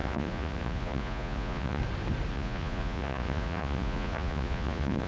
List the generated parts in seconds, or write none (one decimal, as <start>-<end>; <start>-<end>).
0.0-1.8; 2.3-5.1